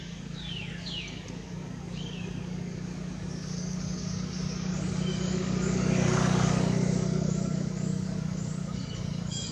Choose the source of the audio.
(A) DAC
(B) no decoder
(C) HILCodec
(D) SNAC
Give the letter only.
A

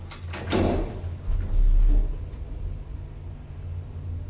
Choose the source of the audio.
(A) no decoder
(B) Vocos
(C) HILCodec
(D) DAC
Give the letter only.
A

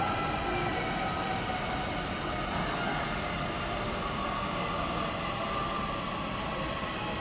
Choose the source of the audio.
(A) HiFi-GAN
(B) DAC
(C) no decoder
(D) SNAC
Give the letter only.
C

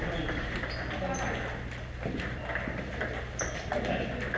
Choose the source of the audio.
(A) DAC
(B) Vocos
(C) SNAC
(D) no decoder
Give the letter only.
D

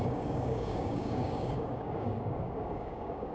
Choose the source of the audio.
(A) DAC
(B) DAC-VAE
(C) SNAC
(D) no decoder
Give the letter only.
A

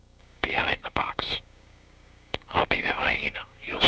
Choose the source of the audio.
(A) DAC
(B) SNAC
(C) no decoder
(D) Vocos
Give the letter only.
A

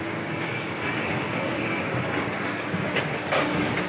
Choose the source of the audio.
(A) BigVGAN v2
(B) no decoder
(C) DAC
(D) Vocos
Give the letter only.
C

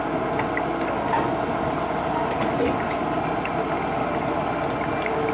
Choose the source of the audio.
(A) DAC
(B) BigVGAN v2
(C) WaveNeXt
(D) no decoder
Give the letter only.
D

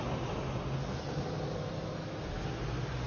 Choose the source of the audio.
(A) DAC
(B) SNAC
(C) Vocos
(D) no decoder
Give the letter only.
D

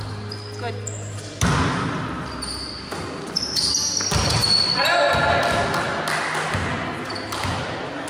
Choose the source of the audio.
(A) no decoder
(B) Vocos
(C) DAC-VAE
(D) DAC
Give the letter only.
A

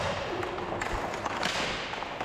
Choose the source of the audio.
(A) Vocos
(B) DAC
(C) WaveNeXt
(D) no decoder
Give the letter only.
D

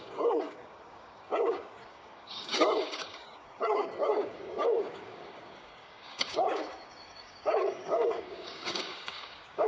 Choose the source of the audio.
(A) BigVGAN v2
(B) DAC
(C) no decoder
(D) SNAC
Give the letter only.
B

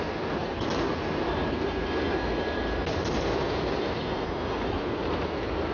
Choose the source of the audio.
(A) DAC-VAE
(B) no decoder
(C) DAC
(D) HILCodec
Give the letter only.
B